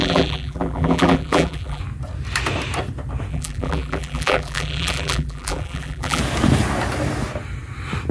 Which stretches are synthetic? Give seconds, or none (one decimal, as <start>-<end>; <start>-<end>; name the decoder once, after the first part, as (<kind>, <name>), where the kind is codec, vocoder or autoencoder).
0.0-1.8 (vocoder, BigVGAN v2); 3.3-6.2

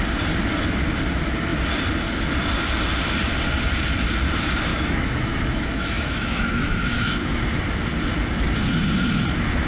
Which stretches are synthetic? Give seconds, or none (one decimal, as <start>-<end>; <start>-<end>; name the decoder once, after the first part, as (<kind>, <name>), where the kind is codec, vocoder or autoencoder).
4.7-7.4 (autoencoder, DAC-VAE)